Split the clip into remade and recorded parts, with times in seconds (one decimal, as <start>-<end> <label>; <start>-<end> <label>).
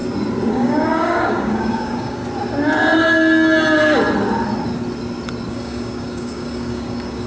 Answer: 0.0-0.5 recorded; 0.5-2.2 remade; 2.2-5.5 recorded; 5.5-7.3 remade